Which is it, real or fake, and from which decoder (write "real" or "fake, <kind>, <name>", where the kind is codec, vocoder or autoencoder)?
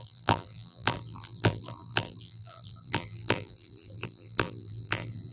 fake, vocoder, BigVGAN v2